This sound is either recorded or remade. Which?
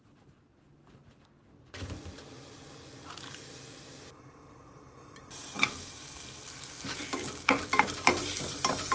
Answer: recorded